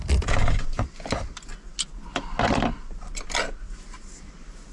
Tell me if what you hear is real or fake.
real